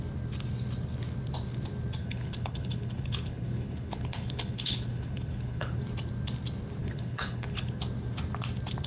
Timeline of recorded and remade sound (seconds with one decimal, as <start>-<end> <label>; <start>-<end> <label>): 0.0-2.0 recorded; 2.0-5.8 remade; 5.8-6.8 recorded; 6.8-7.8 remade; 7.8-8.9 recorded